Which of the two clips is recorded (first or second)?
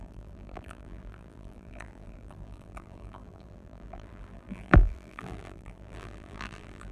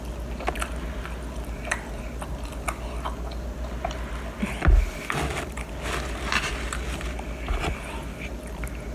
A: second